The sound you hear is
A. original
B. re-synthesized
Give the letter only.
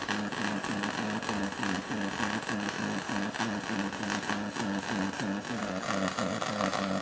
A